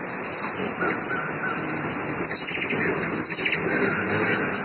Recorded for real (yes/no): yes